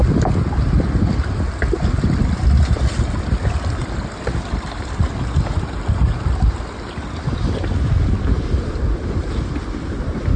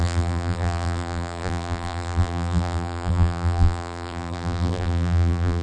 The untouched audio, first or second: first